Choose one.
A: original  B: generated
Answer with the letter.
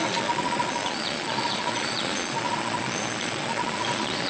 B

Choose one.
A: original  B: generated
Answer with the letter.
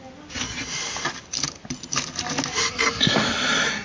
A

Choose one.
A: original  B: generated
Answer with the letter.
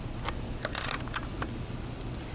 A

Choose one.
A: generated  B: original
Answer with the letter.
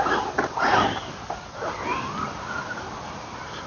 B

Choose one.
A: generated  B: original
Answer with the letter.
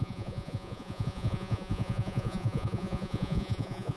A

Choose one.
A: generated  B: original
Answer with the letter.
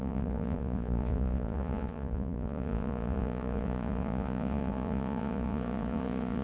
A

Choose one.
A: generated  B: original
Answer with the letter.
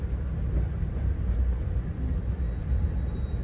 B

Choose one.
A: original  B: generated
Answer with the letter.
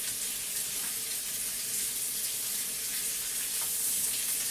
A